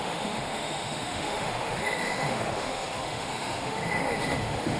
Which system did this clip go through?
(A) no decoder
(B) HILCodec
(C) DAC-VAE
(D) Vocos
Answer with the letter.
C